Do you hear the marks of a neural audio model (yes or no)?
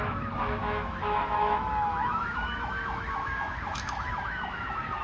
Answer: yes